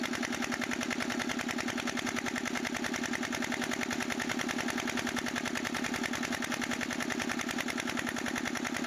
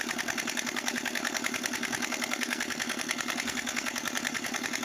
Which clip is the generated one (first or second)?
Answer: second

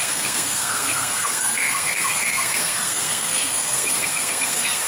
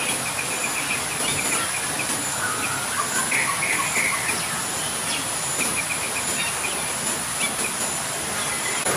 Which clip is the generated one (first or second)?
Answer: first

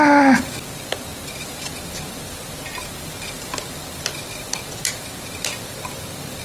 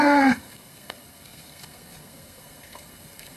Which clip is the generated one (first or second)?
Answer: second